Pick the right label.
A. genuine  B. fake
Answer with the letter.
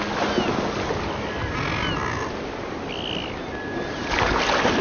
A